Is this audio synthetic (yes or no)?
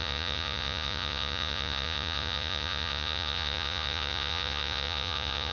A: yes